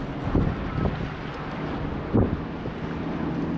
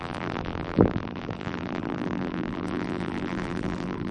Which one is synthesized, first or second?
second